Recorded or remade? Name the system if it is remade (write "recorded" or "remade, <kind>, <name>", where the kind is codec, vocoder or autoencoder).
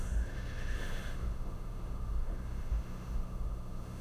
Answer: remade, autoencoder, DAC-VAE